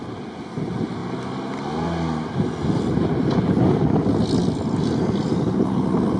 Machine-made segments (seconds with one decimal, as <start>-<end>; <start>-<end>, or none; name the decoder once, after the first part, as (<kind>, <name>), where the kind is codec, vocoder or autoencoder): none